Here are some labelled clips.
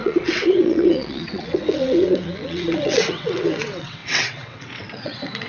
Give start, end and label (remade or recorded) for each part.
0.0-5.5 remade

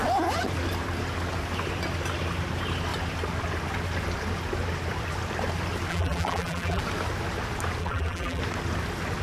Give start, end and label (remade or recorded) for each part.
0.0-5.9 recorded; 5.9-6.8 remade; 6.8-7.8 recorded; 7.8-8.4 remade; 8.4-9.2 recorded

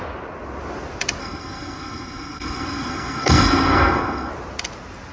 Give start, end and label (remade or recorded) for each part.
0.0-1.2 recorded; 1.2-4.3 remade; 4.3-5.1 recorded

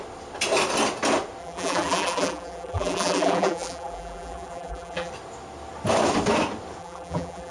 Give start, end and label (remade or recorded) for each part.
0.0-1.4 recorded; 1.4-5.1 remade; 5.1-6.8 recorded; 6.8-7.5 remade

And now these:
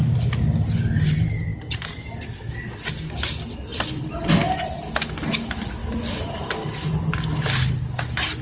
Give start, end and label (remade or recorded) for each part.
0.0-3.7 recorded; 3.7-4.3 remade; 4.3-5.8 recorded; 5.8-6.4 remade; 6.4-8.4 recorded

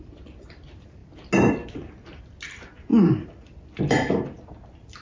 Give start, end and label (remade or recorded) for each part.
0.0-5.0 recorded

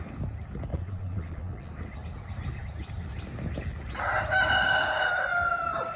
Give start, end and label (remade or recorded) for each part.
0.0-0.7 recorded; 0.7-1.7 remade; 1.7-6.0 recorded